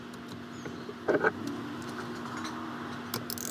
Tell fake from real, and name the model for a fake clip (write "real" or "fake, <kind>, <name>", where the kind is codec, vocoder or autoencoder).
real